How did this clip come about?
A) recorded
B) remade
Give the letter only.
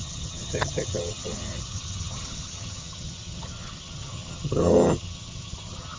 B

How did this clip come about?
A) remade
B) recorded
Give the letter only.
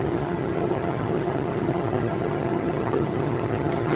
A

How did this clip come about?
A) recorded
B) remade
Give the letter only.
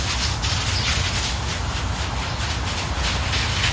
A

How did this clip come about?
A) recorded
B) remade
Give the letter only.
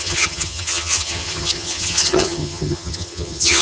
B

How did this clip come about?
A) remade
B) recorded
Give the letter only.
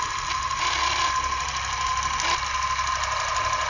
B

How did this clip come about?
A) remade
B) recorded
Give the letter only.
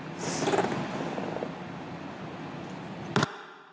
B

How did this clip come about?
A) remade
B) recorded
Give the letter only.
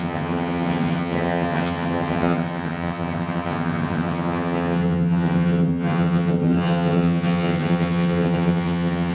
A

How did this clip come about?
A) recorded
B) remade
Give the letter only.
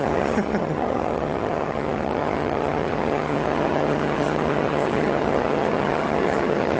B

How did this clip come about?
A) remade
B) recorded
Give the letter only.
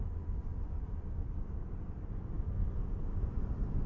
B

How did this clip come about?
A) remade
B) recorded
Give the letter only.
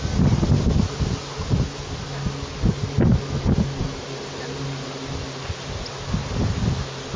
B